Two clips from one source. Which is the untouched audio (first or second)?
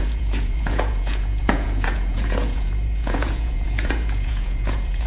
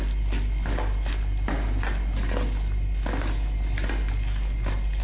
second